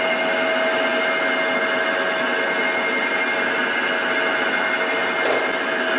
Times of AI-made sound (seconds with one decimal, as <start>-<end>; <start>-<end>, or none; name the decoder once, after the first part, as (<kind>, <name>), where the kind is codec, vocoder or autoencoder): none